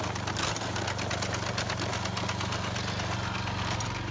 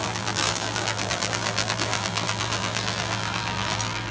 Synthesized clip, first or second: second